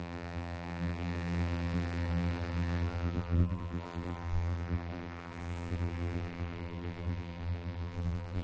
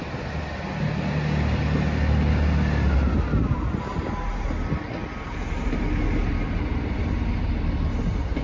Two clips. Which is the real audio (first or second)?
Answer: second